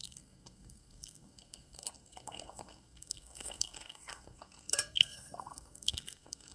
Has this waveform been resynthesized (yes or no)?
yes